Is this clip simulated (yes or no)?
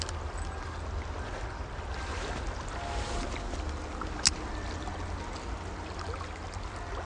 no